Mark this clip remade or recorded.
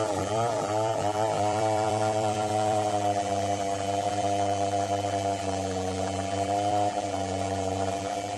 remade